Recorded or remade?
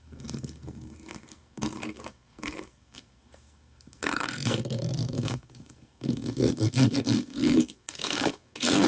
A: remade